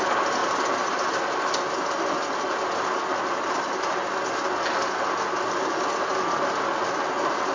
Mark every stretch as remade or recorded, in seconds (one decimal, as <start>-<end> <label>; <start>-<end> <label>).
0.0-7.5 recorded